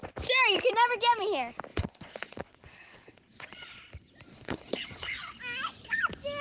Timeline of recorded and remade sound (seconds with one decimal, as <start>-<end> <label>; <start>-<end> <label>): 0.0-1.7 recorded; 1.7-3.9 remade; 3.9-4.3 recorded; 4.3-5.4 remade; 5.4-6.4 recorded